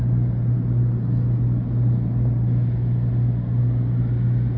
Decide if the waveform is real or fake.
real